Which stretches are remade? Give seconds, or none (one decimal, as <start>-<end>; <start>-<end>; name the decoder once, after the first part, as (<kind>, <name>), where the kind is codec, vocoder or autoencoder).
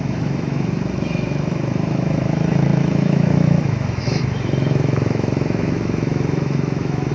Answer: 0.0-7.1 (autoencoder, DAC-VAE)